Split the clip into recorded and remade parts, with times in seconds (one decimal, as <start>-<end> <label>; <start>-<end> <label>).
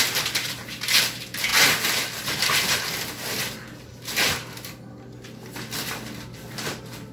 0.0-7.1 recorded